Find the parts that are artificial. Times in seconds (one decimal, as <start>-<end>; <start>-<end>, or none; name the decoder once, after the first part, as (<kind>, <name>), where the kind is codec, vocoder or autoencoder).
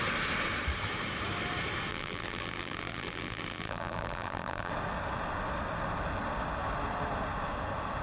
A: 1.9-4.7 (vocoder, BigVGAN v2)